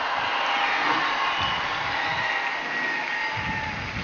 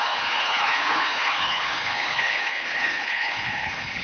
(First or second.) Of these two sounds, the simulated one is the second